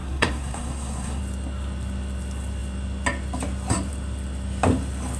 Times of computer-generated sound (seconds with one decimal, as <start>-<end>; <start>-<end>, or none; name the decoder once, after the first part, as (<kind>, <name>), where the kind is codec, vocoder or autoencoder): 0.0-1.2 (codec, SNAC)